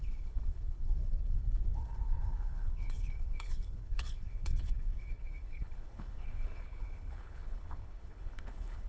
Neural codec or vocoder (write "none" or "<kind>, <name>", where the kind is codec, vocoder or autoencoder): codec, HILCodec